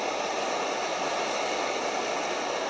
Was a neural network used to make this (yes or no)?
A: no